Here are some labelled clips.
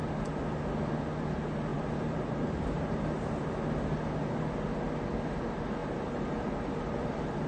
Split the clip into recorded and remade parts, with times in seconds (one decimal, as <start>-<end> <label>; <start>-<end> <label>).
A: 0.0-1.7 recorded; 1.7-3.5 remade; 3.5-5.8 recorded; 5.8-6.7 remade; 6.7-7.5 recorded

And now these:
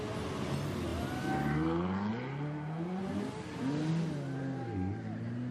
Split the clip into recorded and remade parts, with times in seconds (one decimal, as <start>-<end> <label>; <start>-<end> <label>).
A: 0.0-5.5 recorded

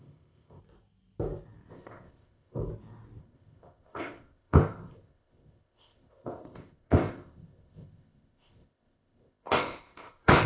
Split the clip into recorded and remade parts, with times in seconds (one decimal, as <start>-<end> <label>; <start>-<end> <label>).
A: 0.0-0.6 remade; 0.6-1.7 recorded; 1.7-2.6 remade; 2.6-3.2 recorded; 3.2-10.5 remade